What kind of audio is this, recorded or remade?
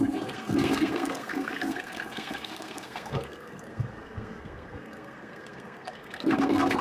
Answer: remade